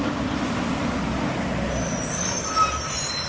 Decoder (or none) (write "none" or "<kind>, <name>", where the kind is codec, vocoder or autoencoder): none